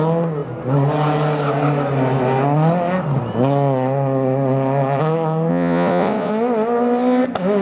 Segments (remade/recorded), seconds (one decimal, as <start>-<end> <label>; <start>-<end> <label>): 0.0-5.5 recorded; 5.5-6.3 remade; 6.3-7.6 recorded